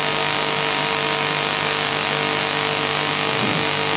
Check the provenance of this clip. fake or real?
real